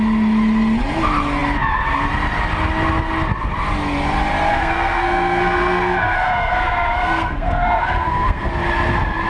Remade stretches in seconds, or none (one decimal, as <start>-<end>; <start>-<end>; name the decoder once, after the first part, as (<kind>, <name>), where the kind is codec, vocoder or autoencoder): 4.5-8.5 (codec, SNAC)

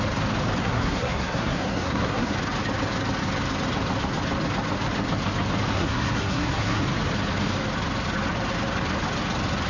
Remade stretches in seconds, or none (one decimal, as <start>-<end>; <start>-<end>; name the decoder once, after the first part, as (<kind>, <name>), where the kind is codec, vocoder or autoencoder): 0.6-2.3 (codec, SNAC); 5.7-6.8

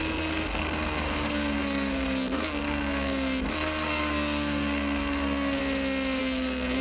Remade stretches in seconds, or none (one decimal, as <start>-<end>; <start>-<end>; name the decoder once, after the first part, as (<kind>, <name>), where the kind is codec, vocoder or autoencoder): 0.0-5.6 (codec, SNAC); 6.2-6.8